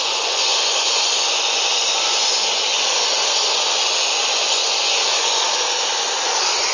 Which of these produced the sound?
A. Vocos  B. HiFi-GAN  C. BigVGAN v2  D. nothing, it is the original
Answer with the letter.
A